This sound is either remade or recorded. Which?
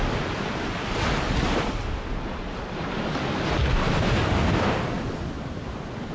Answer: recorded